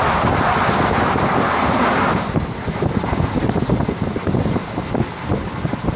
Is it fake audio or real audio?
real